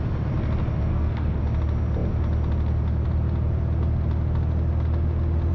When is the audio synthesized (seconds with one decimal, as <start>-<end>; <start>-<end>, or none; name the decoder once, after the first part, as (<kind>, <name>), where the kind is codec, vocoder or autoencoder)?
0.9-1.4 (codec, SNAC)